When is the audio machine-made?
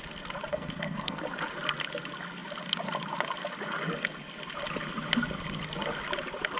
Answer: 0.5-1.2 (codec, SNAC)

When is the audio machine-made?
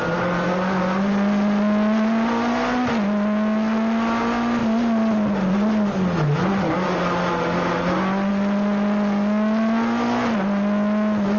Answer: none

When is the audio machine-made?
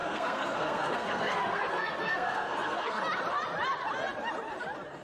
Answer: 0.0-3.0 (codec, SNAC)